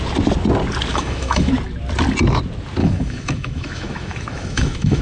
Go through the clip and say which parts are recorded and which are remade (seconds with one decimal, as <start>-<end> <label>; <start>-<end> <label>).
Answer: 0.0-0.9 recorded; 0.9-1.5 remade; 1.5-2.8 recorded; 2.8-5.0 remade

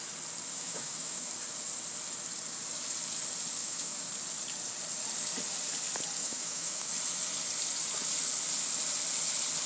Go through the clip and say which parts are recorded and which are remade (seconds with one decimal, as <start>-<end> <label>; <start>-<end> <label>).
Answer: 0.0-0.5 recorded; 0.5-1.3 remade; 1.3-3.6 recorded; 3.6-4.1 remade; 4.1-6.2 recorded; 6.2-6.9 remade; 6.9-9.7 recorded